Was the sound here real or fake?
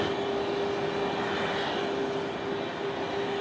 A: real